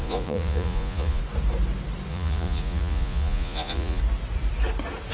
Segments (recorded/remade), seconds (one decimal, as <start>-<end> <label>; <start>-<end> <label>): 0.0-1.2 remade; 1.2-2.1 recorded; 2.1-4.0 remade; 4.0-5.1 recorded